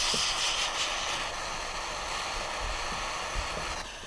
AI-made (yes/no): no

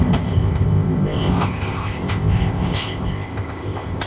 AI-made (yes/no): yes